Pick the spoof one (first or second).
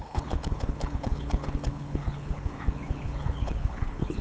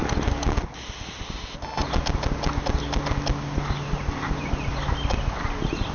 first